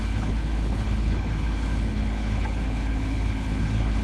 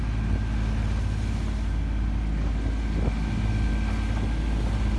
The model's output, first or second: first